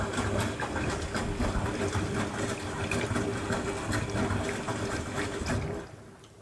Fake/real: real